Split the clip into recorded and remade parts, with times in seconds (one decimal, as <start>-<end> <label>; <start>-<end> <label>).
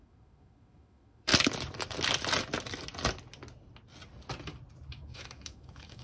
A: 0.0-1.3 remade; 1.3-4.9 recorded; 4.9-6.0 remade